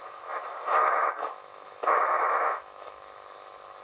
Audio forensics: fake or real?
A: fake